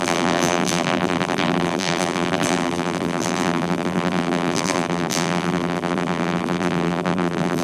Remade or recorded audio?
remade